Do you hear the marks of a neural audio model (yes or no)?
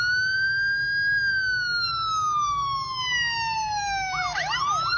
no